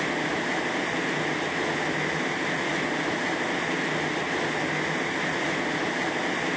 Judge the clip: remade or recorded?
recorded